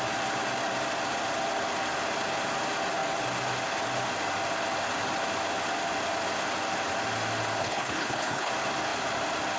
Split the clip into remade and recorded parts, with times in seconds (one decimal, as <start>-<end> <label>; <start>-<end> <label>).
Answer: 0.0-7.6 recorded; 7.6-8.5 remade; 8.5-9.6 recorded